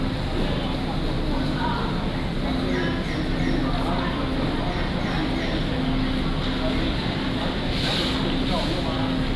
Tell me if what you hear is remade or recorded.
recorded